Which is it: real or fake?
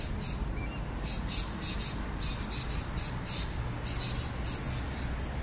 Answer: real